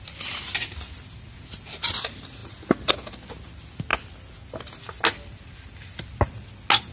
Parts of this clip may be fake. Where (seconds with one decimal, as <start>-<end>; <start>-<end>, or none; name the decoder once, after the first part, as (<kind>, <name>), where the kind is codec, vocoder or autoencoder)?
none